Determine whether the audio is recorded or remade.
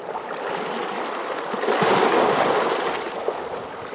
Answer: recorded